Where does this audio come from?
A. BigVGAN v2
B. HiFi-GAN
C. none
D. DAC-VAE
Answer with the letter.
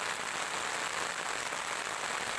C